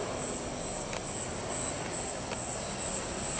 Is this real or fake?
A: real